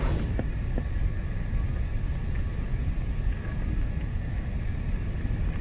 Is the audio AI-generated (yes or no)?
no